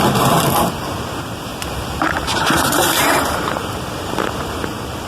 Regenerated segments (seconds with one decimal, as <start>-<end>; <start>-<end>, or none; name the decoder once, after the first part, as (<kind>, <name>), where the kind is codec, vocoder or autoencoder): 1.5-4.6 (vocoder, BigVGAN v2)